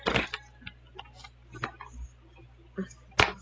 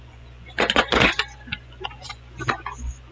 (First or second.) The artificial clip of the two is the second